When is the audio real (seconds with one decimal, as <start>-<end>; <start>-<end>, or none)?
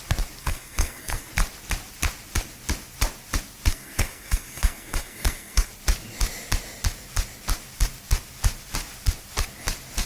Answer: 0.0-0.4; 1.3-3.7; 5.7-10.1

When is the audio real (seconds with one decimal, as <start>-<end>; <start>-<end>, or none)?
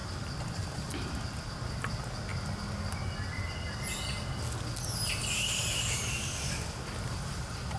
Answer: 1.7-7.8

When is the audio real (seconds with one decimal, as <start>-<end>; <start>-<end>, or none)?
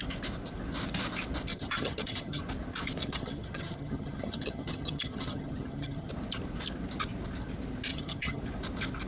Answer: 0.0-1.5; 2.4-3.0; 6.1-7.9; 8.4-9.1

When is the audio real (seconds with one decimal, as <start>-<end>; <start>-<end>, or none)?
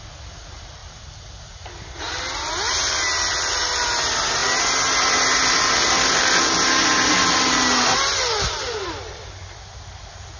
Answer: 0.0-10.4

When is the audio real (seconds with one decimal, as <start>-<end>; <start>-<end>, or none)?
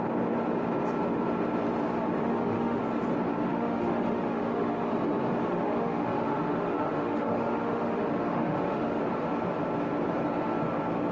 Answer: 0.0-2.2; 2.8-3.5; 4.9-5.5; 9.0-11.1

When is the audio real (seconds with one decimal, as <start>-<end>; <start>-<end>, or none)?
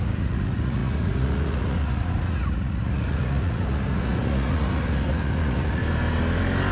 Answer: 5.8-6.7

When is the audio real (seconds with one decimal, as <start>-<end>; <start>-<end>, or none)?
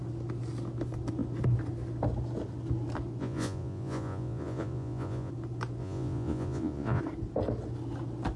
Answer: 0.0-3.2; 5.3-5.8; 7.0-8.4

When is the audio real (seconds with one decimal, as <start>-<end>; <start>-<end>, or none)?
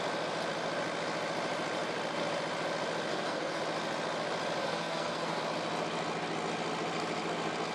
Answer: 0.0-3.1; 3.6-4.6; 5.4-7.7